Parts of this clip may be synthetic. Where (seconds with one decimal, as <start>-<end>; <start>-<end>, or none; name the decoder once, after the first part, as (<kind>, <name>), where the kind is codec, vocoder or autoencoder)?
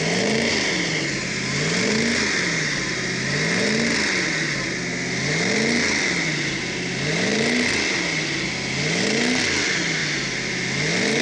none